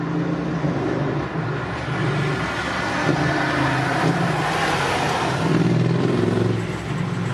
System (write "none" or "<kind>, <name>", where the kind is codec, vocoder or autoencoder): none